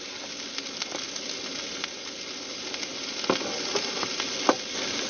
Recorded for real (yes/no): yes